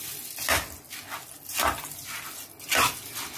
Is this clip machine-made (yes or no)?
no